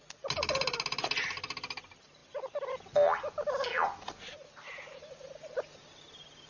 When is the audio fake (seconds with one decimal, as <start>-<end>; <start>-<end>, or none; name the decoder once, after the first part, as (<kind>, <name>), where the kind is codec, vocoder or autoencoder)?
none